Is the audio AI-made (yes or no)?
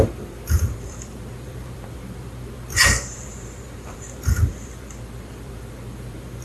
yes